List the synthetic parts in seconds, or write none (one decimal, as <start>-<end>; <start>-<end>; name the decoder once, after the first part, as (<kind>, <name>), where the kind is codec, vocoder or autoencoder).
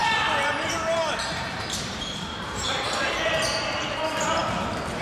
0.0-3.0 (vocoder, BigVGAN v2)